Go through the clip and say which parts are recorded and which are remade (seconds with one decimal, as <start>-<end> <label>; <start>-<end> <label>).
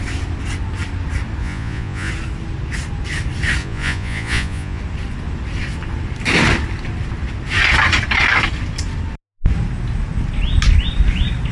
0.0-1.4 recorded; 1.4-2.1 remade; 2.1-3.6 recorded; 3.6-4.8 remade; 4.8-11.5 recorded